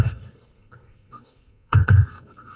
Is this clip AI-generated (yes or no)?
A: yes